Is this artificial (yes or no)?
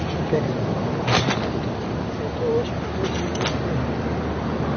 no